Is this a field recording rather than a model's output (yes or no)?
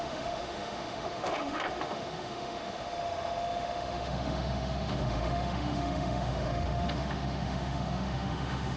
no